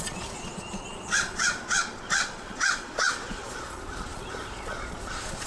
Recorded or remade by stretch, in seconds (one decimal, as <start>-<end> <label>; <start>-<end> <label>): 0.0-5.5 remade